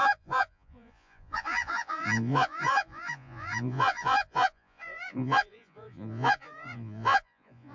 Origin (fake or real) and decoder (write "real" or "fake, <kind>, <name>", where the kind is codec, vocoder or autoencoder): fake, vocoder, Vocos